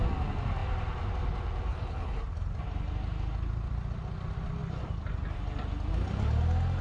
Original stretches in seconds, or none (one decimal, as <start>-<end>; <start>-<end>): 0.0-1.7; 2.2-6.8